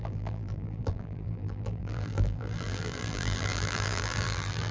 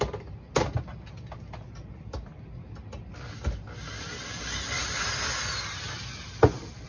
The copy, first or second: first